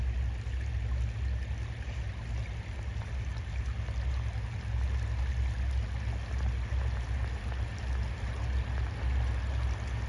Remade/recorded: recorded